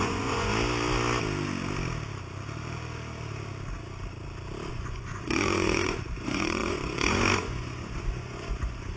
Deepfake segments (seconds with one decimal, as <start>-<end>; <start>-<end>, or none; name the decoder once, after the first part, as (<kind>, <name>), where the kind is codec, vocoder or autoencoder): 0.0-0.5 (vocoder, Vocos); 4.7-9.0